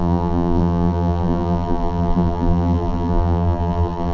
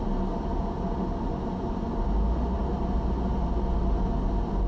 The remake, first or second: first